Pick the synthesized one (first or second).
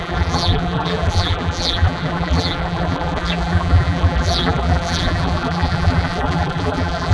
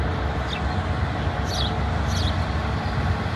first